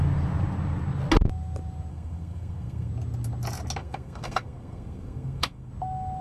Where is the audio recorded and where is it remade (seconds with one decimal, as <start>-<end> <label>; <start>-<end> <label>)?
0.0-1.9 recorded; 1.9-2.9 remade; 2.9-3.8 recorded; 3.8-5.7 remade; 5.7-6.2 recorded